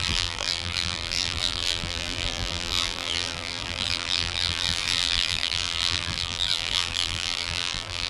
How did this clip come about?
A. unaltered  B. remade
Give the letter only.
B